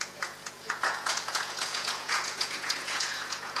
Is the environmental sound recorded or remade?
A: remade